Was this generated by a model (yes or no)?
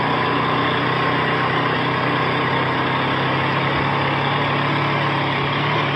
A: no